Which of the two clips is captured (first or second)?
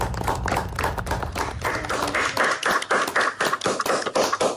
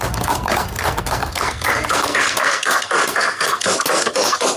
first